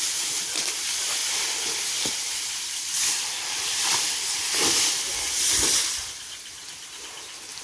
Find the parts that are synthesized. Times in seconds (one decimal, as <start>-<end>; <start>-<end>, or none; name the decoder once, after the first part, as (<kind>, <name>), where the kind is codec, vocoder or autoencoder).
none